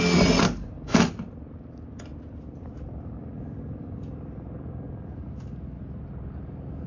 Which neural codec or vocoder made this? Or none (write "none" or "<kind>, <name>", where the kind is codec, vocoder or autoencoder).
none